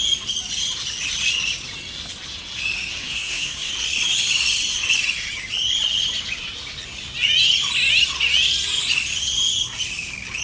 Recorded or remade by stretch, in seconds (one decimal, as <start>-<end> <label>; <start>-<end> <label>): 0.0-2.9 recorded; 2.9-3.7 remade; 3.7-10.4 recorded